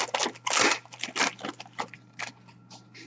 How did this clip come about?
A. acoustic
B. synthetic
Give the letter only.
A